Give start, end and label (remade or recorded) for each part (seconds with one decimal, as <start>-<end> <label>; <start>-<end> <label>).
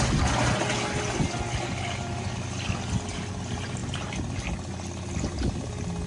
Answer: 0.0-6.1 recorded